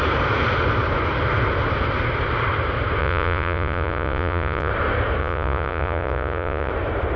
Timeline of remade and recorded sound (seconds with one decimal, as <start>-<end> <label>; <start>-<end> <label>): 0.0-3.0 recorded; 3.0-4.7 remade; 4.7-5.2 recorded; 5.2-6.7 remade; 6.7-7.2 recorded